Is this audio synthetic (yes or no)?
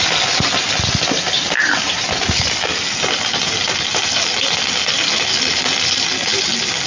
no